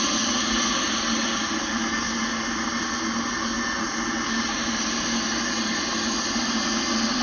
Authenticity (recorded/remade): recorded